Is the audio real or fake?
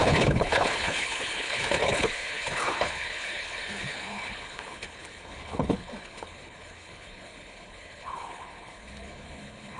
fake